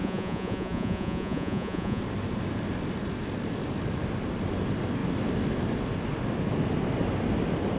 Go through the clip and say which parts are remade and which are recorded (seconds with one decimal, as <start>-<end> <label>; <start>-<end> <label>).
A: 0.0-2.0 remade; 2.0-7.8 recorded